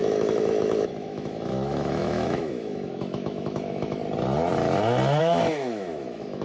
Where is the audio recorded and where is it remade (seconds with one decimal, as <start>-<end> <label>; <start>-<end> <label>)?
0.0-4.0 remade; 4.0-5.2 recorded; 5.2-6.4 remade